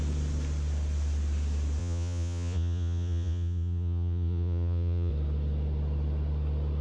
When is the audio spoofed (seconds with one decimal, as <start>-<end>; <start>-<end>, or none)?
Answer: 1.8-5.1